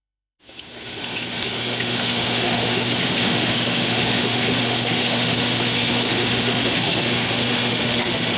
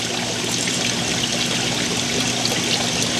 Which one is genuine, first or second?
second